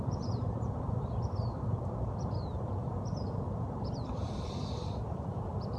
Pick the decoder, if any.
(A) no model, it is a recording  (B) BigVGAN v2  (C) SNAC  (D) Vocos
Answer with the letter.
B